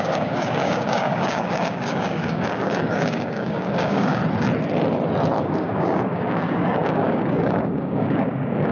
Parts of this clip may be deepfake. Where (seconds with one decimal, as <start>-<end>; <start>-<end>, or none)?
0.0-4.2; 5.4-8.7